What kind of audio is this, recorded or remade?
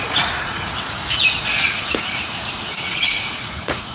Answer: remade